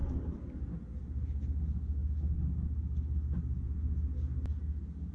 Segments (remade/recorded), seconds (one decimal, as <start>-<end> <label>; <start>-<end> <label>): 0.0-5.1 recorded